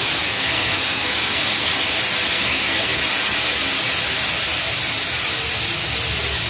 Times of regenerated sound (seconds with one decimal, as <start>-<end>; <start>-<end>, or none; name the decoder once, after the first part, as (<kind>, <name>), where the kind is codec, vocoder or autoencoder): 0.0-1.7 (codec, SNAC); 2.3-3.0